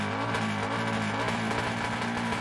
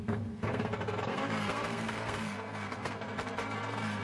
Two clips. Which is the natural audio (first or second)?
first